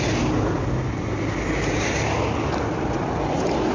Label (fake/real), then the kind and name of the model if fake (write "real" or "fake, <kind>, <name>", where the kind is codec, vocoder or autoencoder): real